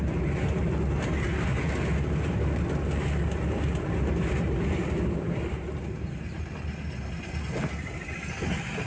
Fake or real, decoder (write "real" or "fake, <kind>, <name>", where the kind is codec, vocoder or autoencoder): real